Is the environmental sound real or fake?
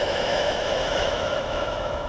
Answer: fake